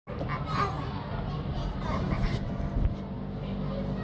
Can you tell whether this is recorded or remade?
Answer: recorded